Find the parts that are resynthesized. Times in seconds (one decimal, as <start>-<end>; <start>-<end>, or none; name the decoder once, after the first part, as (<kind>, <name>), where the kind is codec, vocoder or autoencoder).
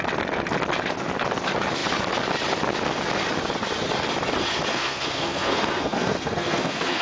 4.7-7.0 (codec, SNAC)